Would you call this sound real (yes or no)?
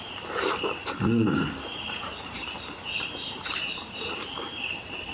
no